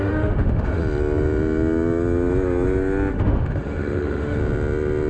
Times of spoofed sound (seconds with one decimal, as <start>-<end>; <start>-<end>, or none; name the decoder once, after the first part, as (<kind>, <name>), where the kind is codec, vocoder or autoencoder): 0.0-0.8 (autoencoder, DAC-VAE); 3.1-4.4